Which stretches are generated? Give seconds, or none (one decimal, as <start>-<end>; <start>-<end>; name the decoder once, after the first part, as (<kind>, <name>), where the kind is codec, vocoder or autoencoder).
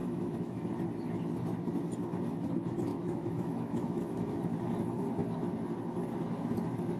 0.0-0.7 (autoencoder, DAC-VAE); 2.9-4.6